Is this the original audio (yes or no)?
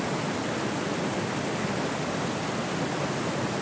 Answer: yes